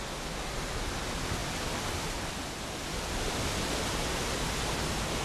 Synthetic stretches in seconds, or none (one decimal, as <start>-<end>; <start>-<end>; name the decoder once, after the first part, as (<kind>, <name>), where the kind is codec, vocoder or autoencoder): 1.4-4.1 (vocoder, BigVGAN v2)